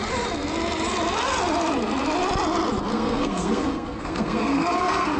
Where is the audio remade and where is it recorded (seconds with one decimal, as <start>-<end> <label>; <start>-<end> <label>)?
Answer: 0.0-2.9 recorded; 2.9-5.2 remade